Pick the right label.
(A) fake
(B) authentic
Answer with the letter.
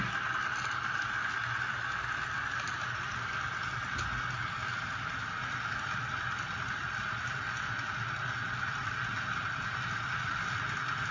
B